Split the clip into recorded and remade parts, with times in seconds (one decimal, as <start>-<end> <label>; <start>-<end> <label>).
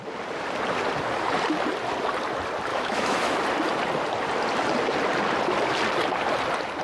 0.0-2.7 recorded; 2.7-3.4 remade; 3.4-6.8 recorded